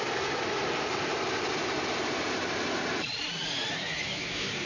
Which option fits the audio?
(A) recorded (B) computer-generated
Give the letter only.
B